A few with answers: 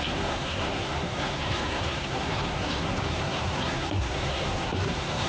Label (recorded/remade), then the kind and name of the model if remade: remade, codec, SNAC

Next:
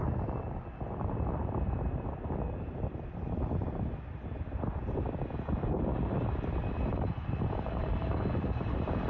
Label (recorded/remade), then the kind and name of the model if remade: remade, vocoder, BigVGAN v2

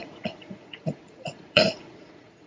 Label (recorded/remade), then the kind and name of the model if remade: remade, vocoder, Vocos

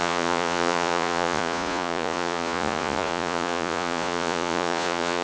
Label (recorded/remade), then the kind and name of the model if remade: remade, vocoder, Vocos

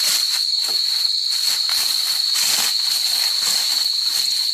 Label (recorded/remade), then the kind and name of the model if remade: recorded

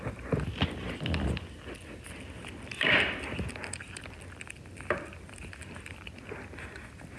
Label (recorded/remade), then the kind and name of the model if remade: recorded